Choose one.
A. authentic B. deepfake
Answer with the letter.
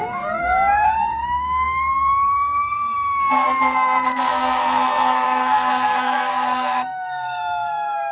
B